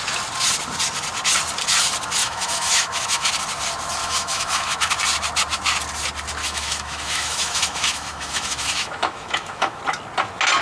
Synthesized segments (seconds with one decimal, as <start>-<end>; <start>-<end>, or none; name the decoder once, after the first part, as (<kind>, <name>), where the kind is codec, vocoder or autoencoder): 2.2-3.3 (autoencoder, DAC-VAE); 4.0-4.9; 6.4-9.8